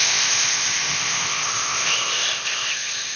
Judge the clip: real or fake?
fake